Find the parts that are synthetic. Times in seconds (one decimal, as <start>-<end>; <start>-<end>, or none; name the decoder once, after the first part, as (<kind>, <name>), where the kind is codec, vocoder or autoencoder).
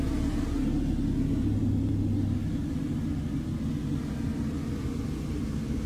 none